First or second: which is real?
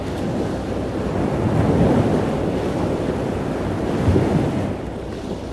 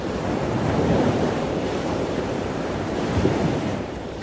first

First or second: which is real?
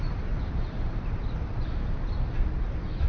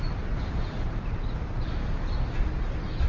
second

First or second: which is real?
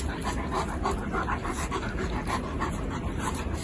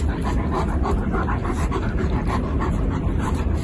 first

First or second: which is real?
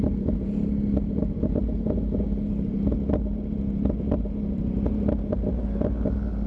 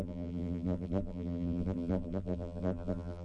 first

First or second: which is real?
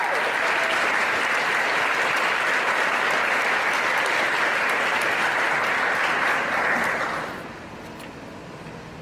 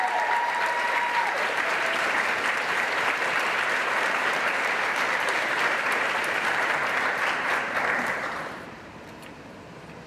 first